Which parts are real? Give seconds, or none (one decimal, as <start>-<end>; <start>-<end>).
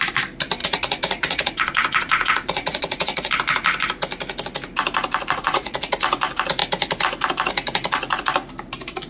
0.0-0.6; 3.3-5.2; 5.9-9.1